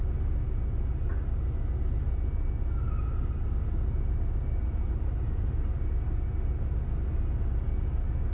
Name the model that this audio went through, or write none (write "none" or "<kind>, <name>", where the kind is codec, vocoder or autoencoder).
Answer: none